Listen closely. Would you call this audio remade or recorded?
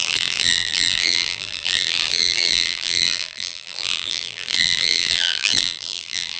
remade